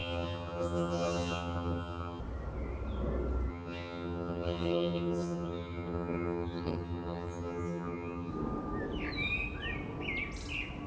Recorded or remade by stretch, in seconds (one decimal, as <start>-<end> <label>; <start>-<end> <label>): 0.0-2.2 remade; 2.2-3.5 recorded; 3.5-8.3 remade; 8.3-10.9 recorded

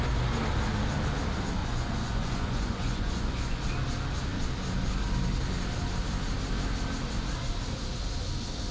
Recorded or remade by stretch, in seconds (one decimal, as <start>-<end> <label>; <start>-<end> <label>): 0.0-1.6 recorded; 1.6-3.6 remade; 3.6-8.7 recorded

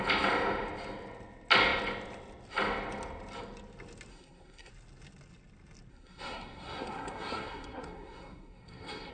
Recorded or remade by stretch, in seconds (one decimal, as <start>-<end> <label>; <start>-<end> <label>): 0.0-4.1 recorded; 4.1-4.7 remade; 4.7-5.9 recorded; 5.9-9.1 remade

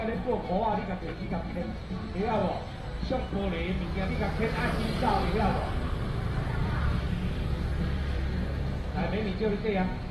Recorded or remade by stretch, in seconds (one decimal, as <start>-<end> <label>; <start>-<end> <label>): 0.0-0.6 remade; 0.6-5.5 recorded; 5.5-8.2 remade; 8.2-10.1 recorded

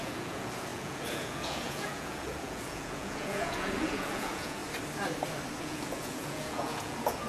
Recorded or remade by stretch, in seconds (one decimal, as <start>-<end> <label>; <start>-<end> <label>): 0.0-4.6 remade; 4.6-5.6 recorded; 5.6-7.3 remade

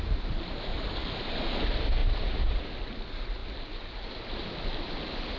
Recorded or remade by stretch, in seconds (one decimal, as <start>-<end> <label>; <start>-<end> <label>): 0.0-0.7 recorded; 0.7-1.3 remade; 1.3-2.0 recorded; 2.0-2.6 remade; 2.6-5.4 recorded

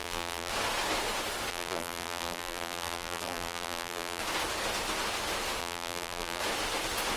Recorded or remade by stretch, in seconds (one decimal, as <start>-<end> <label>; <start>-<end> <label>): 0.0-0.5 remade; 0.5-1.5 recorded; 1.5-4.2 remade; 4.2-5.6 recorded; 5.6-6.4 remade; 6.4-7.2 recorded

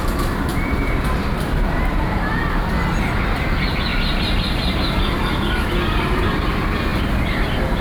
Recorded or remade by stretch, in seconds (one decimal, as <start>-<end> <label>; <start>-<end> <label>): 0.0-0.5 recorded; 0.5-2.4 remade; 2.4-3.9 recorded; 3.9-5.0 remade; 5.0-7.8 recorded